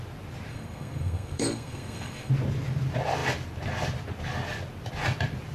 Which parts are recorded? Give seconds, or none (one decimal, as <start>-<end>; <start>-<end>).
0.0-0.5; 2.3-5.5